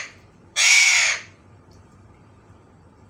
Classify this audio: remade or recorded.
remade